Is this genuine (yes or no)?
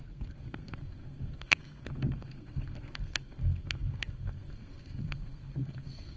no